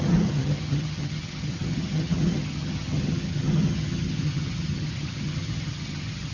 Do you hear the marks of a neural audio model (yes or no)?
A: yes